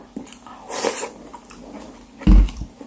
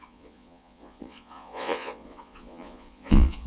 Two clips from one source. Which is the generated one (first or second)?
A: second